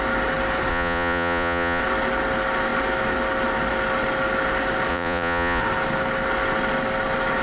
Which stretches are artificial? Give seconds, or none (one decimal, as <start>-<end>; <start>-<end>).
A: 0.7-1.8; 4.9-5.6